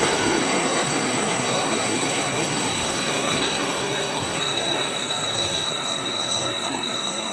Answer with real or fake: fake